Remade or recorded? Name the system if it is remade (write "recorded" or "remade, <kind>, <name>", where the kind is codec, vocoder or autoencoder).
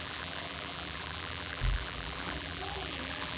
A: remade, vocoder, BigVGAN v2